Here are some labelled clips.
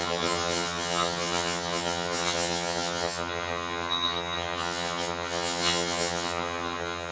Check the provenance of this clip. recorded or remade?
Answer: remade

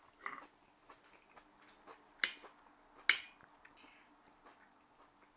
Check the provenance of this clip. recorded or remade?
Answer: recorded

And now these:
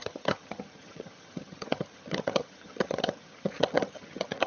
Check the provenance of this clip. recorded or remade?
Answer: remade